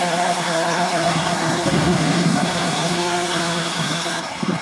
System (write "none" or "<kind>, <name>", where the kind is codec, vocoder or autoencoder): codec, SNAC